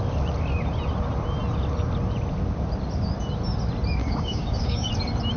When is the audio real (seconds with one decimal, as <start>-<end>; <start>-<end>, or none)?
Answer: 0.0-4.0; 4.9-5.4